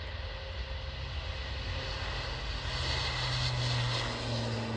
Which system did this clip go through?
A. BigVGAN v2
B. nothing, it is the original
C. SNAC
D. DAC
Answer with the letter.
B